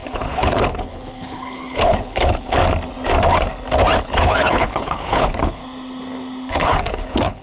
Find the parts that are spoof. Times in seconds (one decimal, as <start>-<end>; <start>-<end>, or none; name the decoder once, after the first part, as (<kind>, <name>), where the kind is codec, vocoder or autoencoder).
0.0-2.6 (codec, HILCodec); 4.0-5.6; 6.5-7.4